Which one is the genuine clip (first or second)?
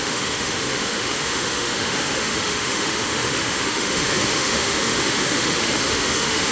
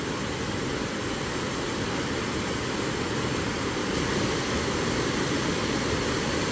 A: second